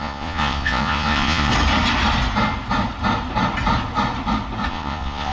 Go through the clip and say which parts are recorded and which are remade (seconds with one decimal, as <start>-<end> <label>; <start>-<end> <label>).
0.0-1.5 remade; 1.5-4.7 recorded; 4.7-5.3 remade